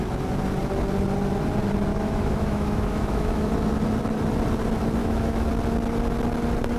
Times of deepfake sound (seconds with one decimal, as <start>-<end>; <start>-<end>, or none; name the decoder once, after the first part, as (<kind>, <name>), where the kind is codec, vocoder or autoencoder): 1.9-3.5 (autoencoder, DAC-VAE); 5.0-5.5